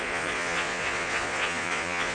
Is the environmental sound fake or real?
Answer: fake